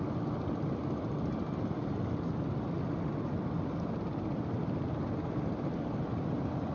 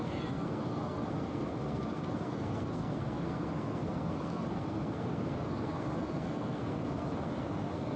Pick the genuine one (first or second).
first